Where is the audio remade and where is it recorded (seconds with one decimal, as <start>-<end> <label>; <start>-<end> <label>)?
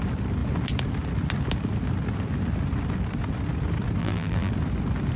0.0-4.0 recorded; 4.0-4.5 remade; 4.5-5.2 recorded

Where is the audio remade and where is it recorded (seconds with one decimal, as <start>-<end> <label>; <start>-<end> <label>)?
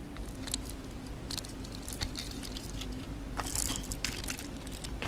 0.0-5.1 recorded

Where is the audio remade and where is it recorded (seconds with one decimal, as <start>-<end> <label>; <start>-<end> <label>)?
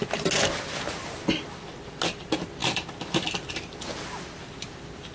0.0-5.1 recorded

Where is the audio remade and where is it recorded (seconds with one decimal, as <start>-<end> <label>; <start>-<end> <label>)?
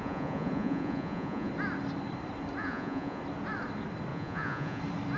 0.0-1.5 remade; 1.5-2.6 recorded; 2.6-3.2 remade; 3.2-4.1 recorded; 4.1-4.8 remade; 4.8-5.2 recorded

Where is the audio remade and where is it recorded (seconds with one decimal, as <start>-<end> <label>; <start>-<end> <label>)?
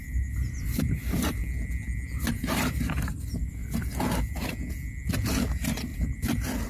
0.0-1.4 remade; 1.4-2.3 recorded; 2.3-3.6 remade; 3.6-5.3 recorded; 5.3-6.7 remade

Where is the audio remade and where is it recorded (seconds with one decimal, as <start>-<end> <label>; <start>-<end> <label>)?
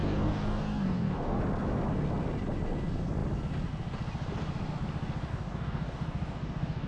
0.0-1.4 remade; 1.4-5.3 recorded; 5.3-6.9 remade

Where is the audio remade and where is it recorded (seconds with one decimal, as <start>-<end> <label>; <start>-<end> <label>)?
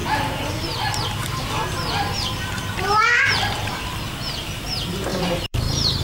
0.0-1.5 remade; 1.5-5.1 recorded; 5.1-6.0 remade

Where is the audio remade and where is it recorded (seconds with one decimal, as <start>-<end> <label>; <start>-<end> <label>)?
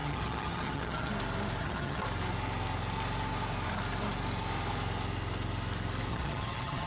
0.0-1.1 remade; 1.1-1.6 recorded; 1.6-2.0 remade; 2.0-6.1 recorded; 6.1-6.9 remade